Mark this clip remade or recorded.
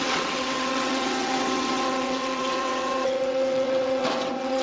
remade